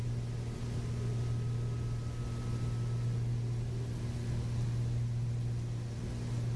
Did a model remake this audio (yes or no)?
no